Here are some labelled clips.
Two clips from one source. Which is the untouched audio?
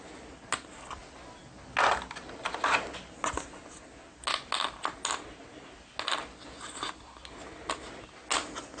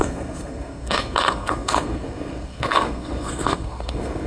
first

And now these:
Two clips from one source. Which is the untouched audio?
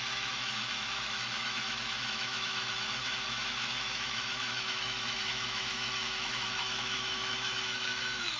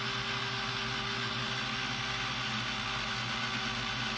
second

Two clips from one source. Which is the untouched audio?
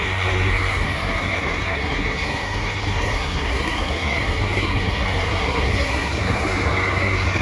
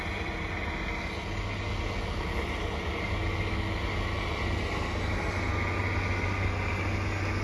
second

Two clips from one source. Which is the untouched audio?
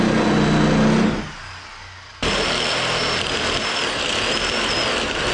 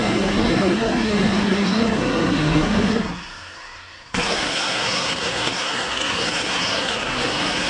first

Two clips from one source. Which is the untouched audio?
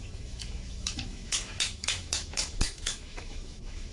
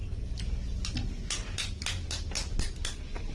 second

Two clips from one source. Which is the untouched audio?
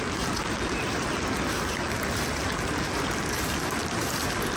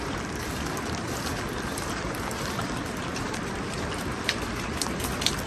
first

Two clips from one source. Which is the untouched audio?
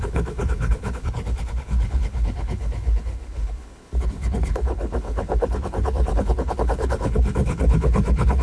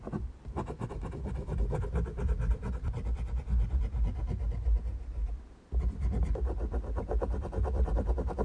second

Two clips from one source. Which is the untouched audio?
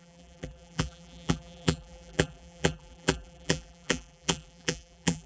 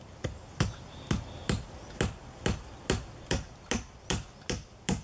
second